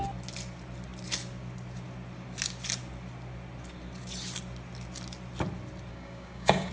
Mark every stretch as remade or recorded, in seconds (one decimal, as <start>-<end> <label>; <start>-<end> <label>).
0.0-5.9 recorded; 5.9-6.7 remade